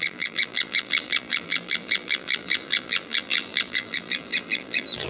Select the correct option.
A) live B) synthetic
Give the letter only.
B